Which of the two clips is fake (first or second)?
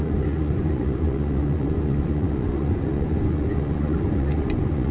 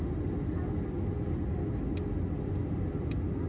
first